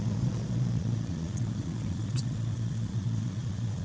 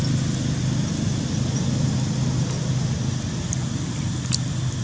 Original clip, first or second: second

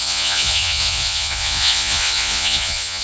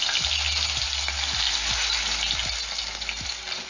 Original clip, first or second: second